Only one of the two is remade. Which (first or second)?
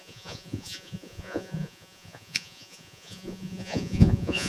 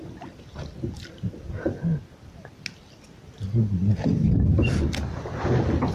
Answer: first